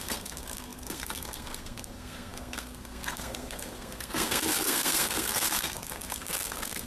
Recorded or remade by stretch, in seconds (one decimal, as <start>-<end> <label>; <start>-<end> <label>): 0.0-6.9 remade